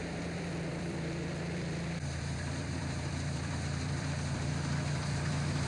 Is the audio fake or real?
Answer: fake